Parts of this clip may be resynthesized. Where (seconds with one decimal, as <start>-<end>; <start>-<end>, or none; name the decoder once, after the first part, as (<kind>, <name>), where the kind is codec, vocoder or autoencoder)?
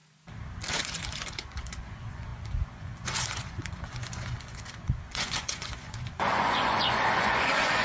0.7-7.8 (vocoder, Vocos)